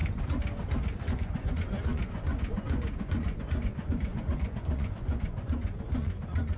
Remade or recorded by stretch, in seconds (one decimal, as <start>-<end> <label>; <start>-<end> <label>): 0.0-1.0 recorded; 1.0-6.6 remade

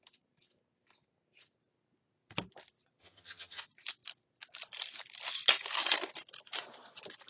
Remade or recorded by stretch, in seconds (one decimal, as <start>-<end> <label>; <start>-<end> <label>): 0.0-3.0 recorded; 3.0-3.6 remade; 3.6-7.3 recorded

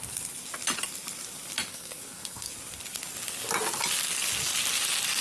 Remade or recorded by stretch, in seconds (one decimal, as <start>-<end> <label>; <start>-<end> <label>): 0.0-1.7 recorded; 1.7-2.5 remade; 2.5-5.2 recorded